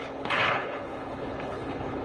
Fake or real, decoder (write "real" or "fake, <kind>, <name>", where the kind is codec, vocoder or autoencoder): fake, codec, HILCodec